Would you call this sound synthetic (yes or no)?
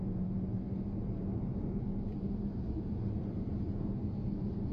yes